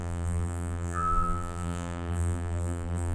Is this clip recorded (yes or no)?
no